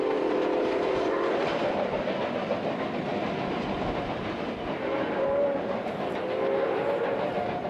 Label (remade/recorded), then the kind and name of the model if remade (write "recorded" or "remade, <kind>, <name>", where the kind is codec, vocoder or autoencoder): recorded